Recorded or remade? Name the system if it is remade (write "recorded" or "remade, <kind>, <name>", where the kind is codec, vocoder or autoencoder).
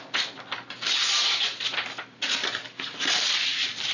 recorded